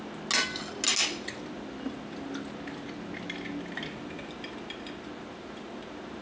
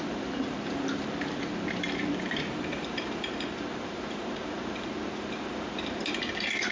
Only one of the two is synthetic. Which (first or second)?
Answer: second